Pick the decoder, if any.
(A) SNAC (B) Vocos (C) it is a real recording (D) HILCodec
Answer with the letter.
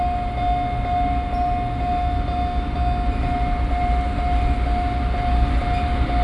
C